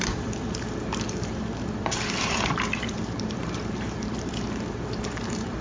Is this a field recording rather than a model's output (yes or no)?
no